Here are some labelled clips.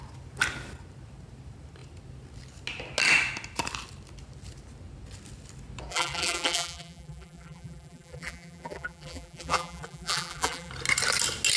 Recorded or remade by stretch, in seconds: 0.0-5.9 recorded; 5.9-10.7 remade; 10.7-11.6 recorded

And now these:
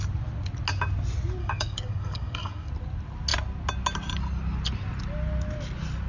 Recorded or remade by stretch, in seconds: 0.0-1.4 recorded; 1.4-2.7 remade; 2.7-6.1 recorded

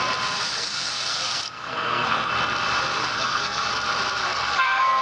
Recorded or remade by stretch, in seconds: 0.0-0.5 recorded; 0.5-2.3 remade; 2.3-3.0 recorded; 3.0-3.7 remade; 3.7-4.2 recorded; 4.2-5.0 remade

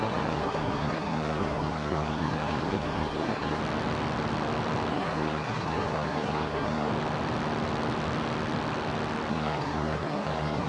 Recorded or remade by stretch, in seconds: 0.0-3.6 remade; 3.6-4.9 recorded; 4.9-6.9 remade; 6.9-9.3 recorded; 9.3-10.7 remade